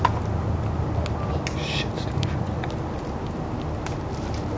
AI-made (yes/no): no